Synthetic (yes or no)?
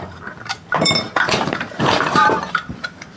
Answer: yes